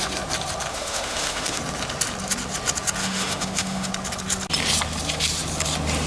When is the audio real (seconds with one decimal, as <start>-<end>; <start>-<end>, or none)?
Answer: 0.0-0.7; 1.6-3.0; 3.9-6.1